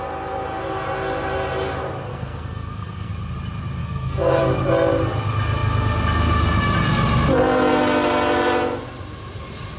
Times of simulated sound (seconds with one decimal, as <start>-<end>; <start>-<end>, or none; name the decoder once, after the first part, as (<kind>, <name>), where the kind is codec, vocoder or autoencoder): 2.1-3.1 (codec, SNAC); 3.8-4.4